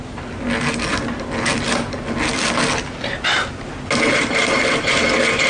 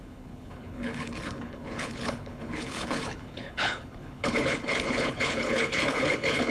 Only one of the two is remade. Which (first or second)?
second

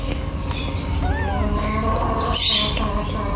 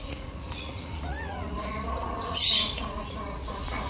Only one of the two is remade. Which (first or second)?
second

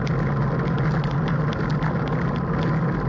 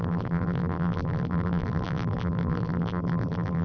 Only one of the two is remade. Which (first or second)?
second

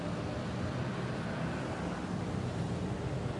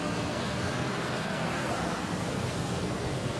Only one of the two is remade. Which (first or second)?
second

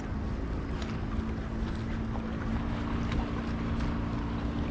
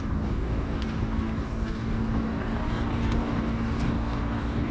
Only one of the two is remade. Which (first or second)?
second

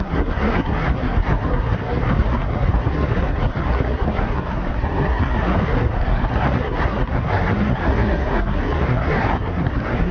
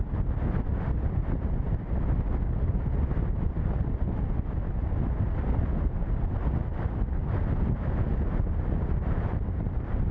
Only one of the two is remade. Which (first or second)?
first